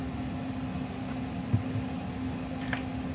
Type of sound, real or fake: real